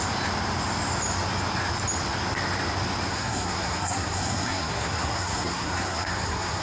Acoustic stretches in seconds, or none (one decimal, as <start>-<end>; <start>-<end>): 0.0-3.1